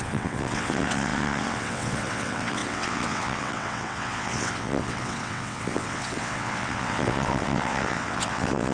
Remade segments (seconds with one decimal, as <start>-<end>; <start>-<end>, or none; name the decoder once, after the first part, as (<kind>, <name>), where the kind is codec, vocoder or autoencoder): 0.0-8.7 (vocoder, WaveNeXt)